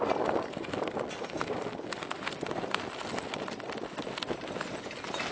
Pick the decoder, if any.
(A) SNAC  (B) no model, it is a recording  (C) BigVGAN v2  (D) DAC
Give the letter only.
B